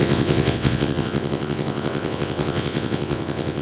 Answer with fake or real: fake